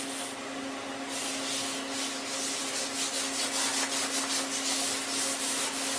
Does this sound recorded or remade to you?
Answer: recorded